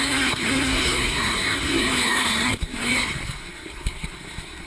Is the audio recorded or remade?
remade